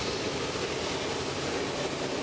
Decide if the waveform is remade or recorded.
recorded